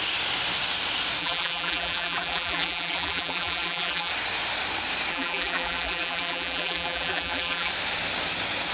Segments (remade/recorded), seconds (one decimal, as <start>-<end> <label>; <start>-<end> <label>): 0.0-1.2 recorded; 1.2-4.1 remade; 4.1-5.1 recorded; 5.1-7.7 remade; 7.7-8.7 recorded

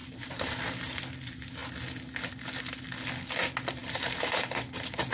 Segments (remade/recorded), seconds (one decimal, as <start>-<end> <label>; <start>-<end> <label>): 0.0-0.5 remade; 0.5-3.8 recorded; 3.8-5.1 remade

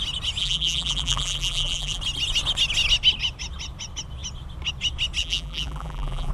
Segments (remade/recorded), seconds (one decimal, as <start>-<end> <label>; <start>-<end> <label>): 0.0-0.4 recorded; 0.4-2.0 remade; 2.0-5.2 recorded; 5.2-6.3 remade

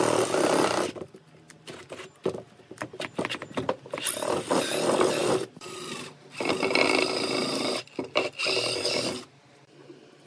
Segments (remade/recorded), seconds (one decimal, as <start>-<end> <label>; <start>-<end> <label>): 0.0-5.2 recorded; 5.2-6.8 remade; 6.8-10.3 recorded